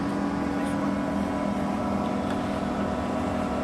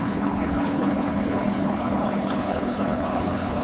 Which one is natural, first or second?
first